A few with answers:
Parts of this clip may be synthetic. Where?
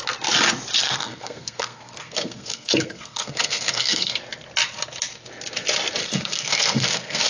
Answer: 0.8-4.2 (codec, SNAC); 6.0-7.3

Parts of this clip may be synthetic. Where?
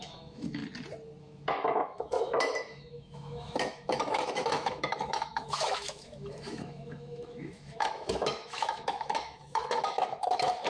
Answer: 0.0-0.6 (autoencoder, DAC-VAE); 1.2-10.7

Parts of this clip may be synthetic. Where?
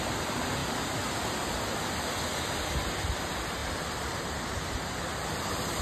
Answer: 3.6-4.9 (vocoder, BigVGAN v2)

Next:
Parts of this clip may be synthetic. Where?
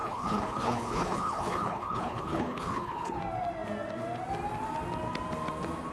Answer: 0.0-3.2 (codec, HILCodec)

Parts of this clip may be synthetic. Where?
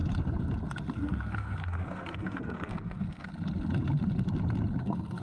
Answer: 0.9-3.3 (codec, SNAC); 4.8-5.2